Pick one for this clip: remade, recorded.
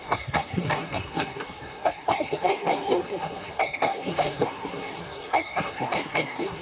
remade